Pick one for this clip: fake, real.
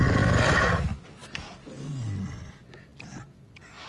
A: real